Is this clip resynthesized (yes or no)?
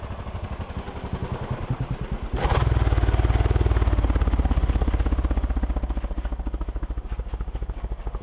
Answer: no